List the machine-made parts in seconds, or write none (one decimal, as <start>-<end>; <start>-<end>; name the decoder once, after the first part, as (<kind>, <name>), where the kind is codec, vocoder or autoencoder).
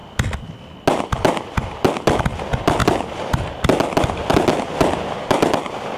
none